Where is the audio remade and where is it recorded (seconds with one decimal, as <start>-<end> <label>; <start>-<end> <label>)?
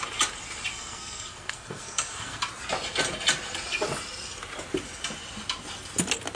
0.0-0.7 recorded; 0.7-2.4 remade; 2.4-6.4 recorded